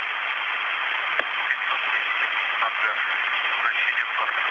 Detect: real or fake real